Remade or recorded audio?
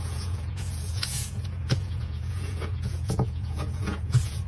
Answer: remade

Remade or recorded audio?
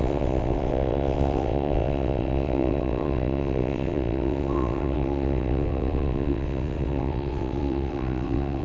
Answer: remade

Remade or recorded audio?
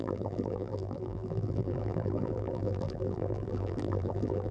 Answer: remade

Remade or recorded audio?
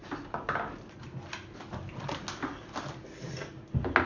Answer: recorded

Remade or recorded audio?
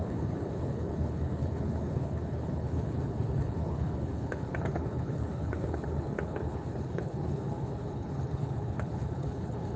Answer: remade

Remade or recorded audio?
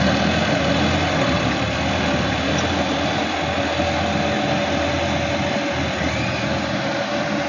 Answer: recorded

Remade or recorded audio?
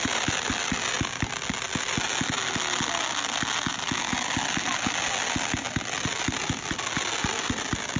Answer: recorded